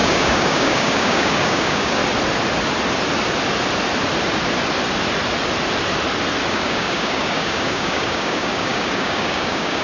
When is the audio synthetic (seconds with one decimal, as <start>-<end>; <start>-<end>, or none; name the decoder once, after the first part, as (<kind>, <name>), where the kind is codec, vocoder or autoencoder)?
0.0-2.0 (codec, DAC); 6.5-9.8